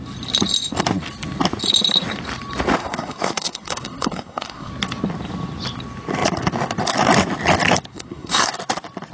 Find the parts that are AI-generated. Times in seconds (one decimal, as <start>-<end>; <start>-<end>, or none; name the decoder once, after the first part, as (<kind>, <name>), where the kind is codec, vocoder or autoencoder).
2.8-4.7 (codec, SNAC); 7.9-8.5